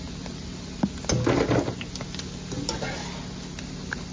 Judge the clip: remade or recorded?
recorded